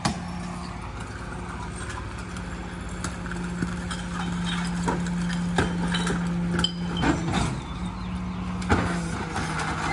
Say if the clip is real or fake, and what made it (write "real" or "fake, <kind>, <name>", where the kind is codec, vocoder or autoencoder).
real